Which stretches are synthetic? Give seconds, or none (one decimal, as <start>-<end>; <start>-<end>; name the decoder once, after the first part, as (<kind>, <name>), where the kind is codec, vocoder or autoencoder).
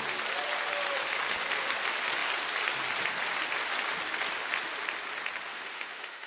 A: 5.5-6.3 (autoencoder, DAC-VAE)